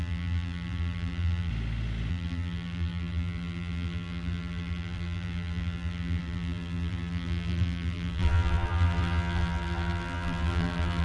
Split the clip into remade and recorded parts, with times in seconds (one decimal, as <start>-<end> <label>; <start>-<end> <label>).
0.0-1.5 remade; 1.5-2.1 recorded; 2.1-11.0 remade